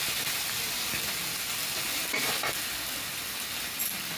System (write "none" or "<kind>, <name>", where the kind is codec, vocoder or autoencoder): none